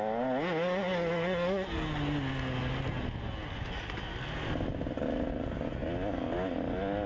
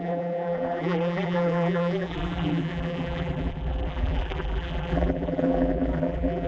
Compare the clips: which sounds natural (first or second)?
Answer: first